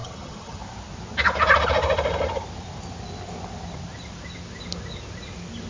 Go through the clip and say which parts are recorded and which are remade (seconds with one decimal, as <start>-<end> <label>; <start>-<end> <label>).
0.0-0.6 remade; 0.6-5.7 recorded

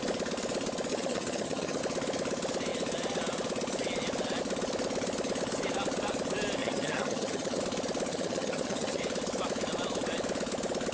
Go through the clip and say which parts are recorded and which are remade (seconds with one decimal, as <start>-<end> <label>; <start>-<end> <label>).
0.0-0.9 recorded; 0.9-1.8 remade; 1.8-6.6 recorded; 6.6-7.6 remade; 7.6-8.1 recorded; 8.1-9.0 remade; 9.0-10.9 recorded

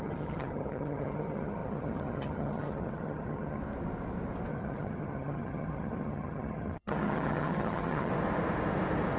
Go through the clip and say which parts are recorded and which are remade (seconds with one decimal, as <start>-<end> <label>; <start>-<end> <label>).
0.0-3.6 remade; 3.6-4.5 recorded; 4.5-8.1 remade; 8.1-9.2 recorded

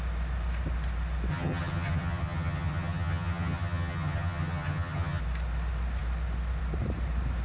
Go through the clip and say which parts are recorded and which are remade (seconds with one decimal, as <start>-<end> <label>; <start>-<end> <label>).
0.0-1.3 recorded; 1.3-5.2 remade; 5.2-7.4 recorded

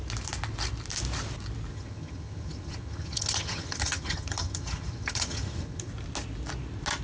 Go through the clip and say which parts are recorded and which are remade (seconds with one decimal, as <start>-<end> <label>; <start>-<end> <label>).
0.0-1.7 recorded; 1.7-5.9 remade; 5.9-7.0 recorded

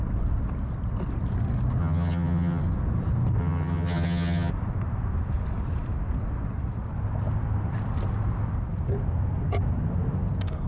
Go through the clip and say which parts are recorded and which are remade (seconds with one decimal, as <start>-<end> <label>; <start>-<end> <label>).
0.0-1.8 recorded; 1.8-2.6 remade; 2.6-3.4 recorded; 3.4-4.5 remade; 4.5-10.7 recorded

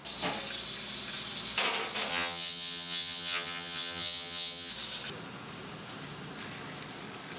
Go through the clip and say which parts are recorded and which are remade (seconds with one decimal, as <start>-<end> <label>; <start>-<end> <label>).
0.0-2.1 recorded; 2.1-4.7 remade; 4.7-7.4 recorded

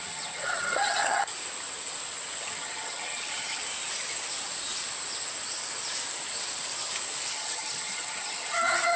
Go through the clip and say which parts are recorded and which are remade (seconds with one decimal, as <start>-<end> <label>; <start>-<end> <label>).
0.0-1.3 remade; 1.3-2.4 recorded; 2.4-3.6 remade; 3.6-7.3 recorded; 7.3-9.0 remade